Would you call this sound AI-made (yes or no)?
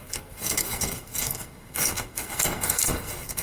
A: yes